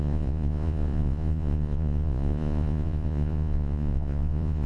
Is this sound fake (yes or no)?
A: yes